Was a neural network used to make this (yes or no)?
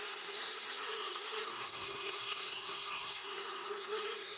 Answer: yes